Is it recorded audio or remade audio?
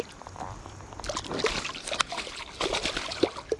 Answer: recorded